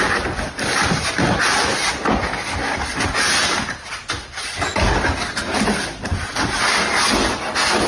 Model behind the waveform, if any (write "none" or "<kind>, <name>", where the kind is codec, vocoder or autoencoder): none